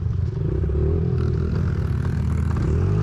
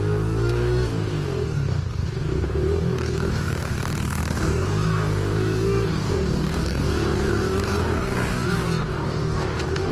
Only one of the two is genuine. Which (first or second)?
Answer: first